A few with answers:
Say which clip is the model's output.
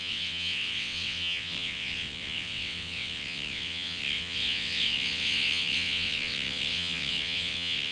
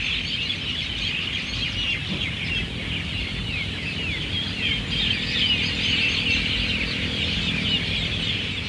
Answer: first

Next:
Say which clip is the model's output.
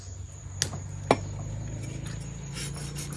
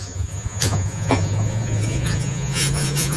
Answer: second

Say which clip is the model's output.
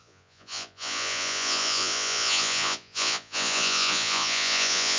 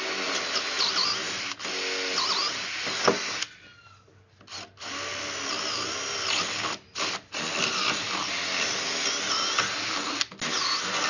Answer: first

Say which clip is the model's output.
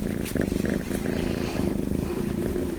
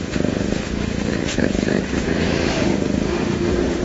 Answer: second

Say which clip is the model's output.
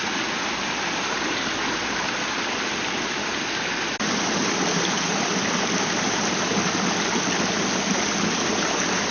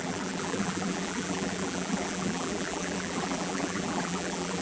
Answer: second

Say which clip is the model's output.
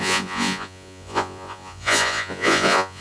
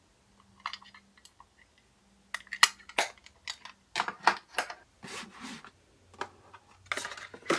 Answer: first